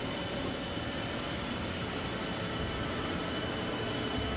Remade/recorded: recorded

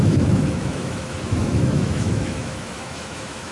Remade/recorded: remade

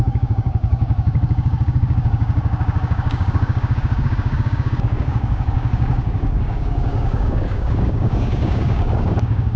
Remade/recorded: remade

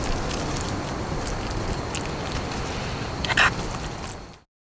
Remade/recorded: recorded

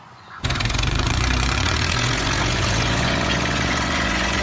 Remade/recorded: remade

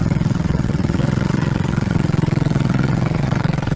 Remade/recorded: remade